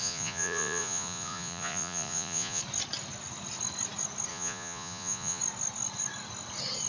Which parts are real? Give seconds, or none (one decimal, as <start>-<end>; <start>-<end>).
2.6-4.3; 5.4-6.9